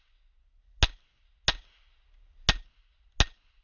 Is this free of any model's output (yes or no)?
yes